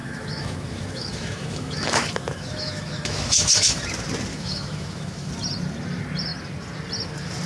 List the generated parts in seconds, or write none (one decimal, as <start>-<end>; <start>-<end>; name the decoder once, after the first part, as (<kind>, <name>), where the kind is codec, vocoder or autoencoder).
0.0-3.8 (autoencoder, DAC-VAE); 4.3-5.3